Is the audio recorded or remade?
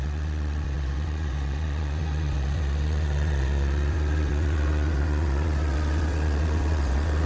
remade